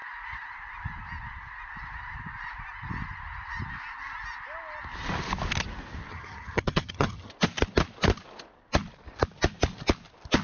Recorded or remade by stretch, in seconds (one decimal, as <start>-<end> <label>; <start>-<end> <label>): 0.0-6.1 recorded; 6.1-7.3 remade; 7.3-10.4 recorded